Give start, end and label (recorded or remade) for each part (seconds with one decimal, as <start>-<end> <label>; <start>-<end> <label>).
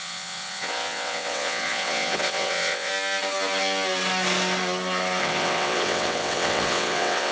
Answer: 0.0-2.9 remade; 2.9-5.2 recorded; 5.2-7.3 remade